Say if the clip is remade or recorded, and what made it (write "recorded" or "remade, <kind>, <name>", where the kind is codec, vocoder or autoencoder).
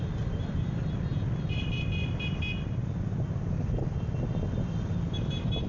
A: recorded